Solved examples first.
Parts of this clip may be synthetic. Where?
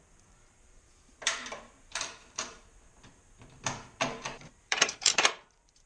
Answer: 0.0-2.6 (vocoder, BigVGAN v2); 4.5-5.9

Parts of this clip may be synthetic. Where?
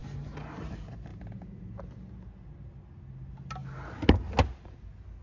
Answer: none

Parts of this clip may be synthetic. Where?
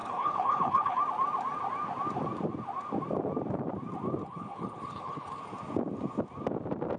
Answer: 0.0-1.0 (codec, HILCodec); 4.2-5.4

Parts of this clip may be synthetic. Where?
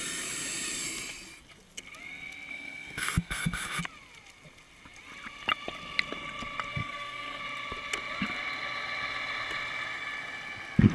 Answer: 2.5-3.8 (codec, SNAC); 6.7-7.4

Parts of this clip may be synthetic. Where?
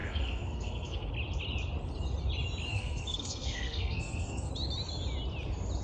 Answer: 0.0-1.1 (codec, SNAC); 2.7-4.5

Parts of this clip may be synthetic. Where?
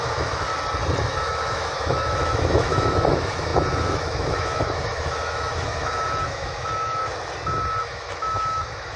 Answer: 0.0-0.5 (autoencoder, DAC-VAE); 1.2-7.0; 7.8-9.0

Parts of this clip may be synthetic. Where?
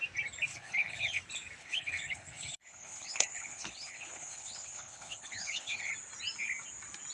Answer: 0.5-1.2 (codec, HILCodec); 1.6-5.9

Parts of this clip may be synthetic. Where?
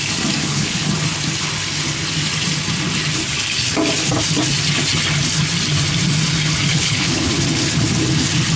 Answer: 0.4-0.9 (codec, HILCodec); 6.7-7.3